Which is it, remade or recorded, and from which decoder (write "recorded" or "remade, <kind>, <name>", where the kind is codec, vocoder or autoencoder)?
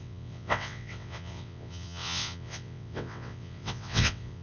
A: remade, vocoder, WaveNeXt